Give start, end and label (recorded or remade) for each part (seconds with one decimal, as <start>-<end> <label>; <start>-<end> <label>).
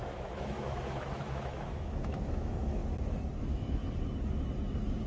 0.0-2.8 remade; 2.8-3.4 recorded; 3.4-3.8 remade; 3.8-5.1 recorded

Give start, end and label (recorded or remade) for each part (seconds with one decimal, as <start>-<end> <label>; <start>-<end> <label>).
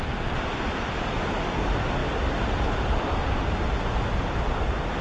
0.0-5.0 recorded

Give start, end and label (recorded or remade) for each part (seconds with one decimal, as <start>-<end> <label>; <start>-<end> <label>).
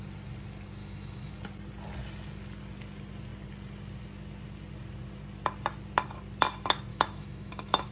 0.0-0.8 recorded; 0.8-1.3 remade; 1.3-6.9 recorded; 6.9-7.9 remade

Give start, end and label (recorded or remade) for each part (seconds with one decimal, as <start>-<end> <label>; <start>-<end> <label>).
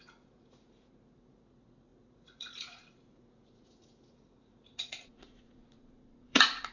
0.0-6.7 remade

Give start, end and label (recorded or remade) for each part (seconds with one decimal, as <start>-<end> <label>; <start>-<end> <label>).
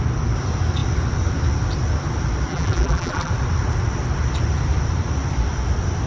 0.0-2.5 recorded; 2.5-3.3 remade; 3.3-6.1 recorded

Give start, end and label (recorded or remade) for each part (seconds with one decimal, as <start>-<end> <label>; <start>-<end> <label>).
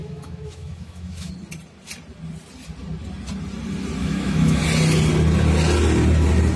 0.0-1.3 remade; 1.3-4.0 recorded; 4.0-4.6 remade; 4.6-6.6 recorded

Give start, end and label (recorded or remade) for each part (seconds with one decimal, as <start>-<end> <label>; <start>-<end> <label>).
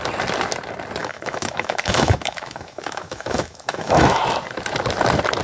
0.0-1.0 recorded; 1.0-4.2 remade; 4.2-5.4 recorded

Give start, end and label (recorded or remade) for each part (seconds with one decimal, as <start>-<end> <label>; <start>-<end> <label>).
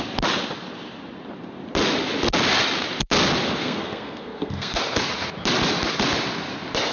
0.0-3.6 recorded; 3.6-4.8 remade; 4.8-6.9 recorded